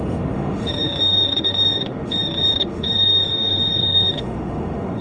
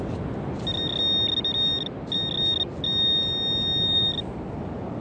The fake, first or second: first